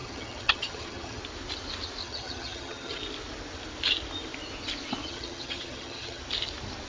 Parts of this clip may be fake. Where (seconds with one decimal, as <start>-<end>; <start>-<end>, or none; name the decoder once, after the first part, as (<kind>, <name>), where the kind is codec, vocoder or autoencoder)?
0.0-1.2 (vocoder, HiFi-GAN); 2.0-3.0; 5.0-6.2